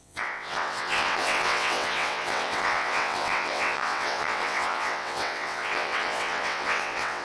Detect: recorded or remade remade